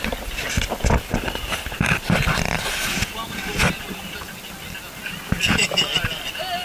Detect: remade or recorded recorded